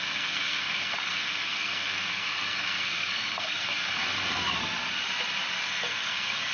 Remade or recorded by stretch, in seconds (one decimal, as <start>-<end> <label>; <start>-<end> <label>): 0.0-3.8 remade; 3.8-5.7 recorded; 5.7-6.5 remade